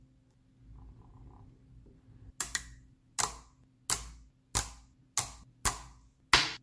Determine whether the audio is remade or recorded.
recorded